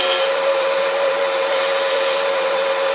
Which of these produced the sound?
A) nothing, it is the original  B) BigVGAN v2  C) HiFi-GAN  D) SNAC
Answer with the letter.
B